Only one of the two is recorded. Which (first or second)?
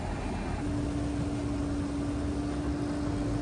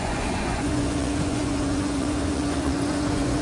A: first